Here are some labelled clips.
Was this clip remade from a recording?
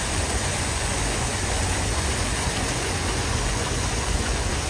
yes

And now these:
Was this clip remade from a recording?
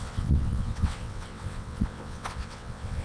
yes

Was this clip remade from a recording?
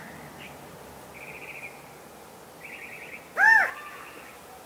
no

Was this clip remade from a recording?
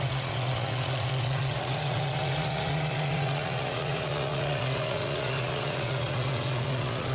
yes